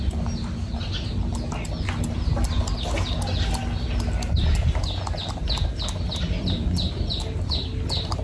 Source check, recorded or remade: recorded